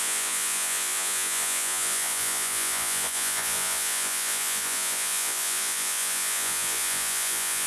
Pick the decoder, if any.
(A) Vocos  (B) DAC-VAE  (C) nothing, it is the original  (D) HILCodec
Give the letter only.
A